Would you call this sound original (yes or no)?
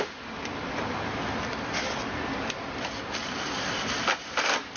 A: yes